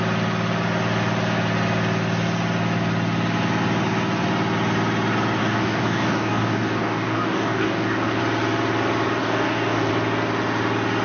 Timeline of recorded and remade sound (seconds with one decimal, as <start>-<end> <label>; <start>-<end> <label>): 0.0-5.4 recorded; 5.4-8.2 remade; 8.2-9.2 recorded; 9.2-9.9 remade; 9.9-11.0 recorded